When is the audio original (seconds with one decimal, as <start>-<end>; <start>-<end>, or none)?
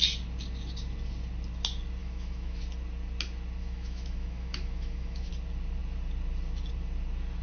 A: 0.0-2.0; 2.6-3.6; 5.3-7.4